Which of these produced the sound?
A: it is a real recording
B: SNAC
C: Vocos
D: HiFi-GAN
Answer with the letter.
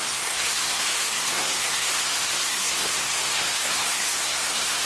B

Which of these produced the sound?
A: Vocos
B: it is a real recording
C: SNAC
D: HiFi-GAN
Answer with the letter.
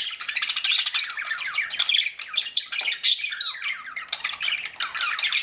B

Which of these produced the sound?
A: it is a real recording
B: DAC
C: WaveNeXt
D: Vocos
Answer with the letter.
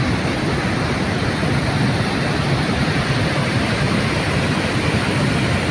A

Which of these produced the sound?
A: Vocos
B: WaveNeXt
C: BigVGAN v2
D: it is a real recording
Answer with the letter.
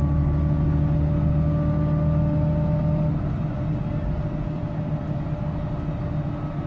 D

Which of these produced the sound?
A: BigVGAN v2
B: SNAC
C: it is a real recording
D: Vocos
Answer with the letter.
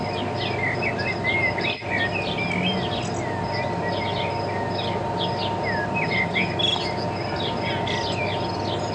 C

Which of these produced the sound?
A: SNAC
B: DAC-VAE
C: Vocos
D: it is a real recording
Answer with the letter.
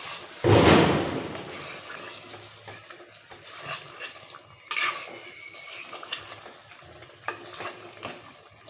D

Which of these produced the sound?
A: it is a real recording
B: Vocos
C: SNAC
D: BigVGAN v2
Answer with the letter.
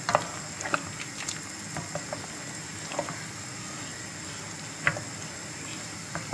A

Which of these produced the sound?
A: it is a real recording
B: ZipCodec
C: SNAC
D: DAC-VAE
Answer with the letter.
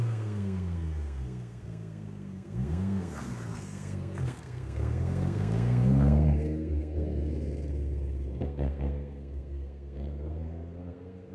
C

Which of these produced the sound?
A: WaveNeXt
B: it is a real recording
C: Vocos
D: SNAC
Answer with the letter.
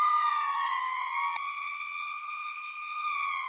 A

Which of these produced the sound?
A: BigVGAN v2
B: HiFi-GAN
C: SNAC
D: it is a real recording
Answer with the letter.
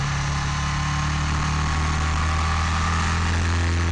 D